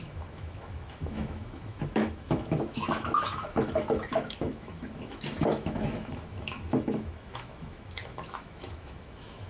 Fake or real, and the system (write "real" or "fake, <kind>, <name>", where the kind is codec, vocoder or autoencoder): fake, autoencoder, DAC-VAE